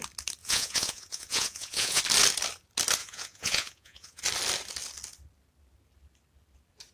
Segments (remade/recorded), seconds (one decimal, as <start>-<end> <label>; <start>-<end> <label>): 0.0-0.4 recorded; 0.4-2.0 remade; 2.0-3.0 recorded; 3.0-4.2 remade; 4.2-6.9 recorded